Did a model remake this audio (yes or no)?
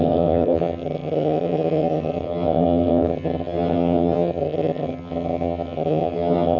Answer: yes